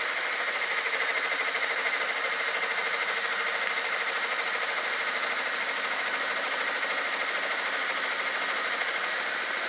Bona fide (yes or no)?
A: yes